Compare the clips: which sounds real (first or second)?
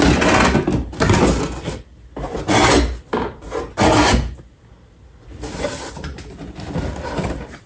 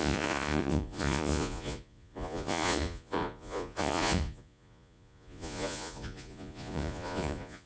first